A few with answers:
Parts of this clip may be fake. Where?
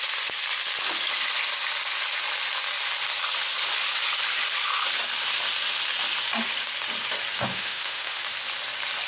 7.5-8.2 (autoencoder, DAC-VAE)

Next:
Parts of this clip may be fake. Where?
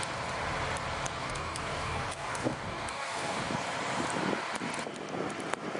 1.2-3.5 (codec, DAC)